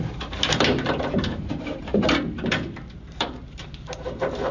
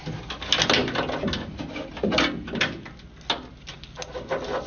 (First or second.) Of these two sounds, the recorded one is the second